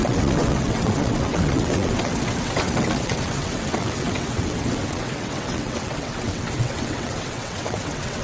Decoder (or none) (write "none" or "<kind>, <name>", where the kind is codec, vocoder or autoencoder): vocoder, WaveNeXt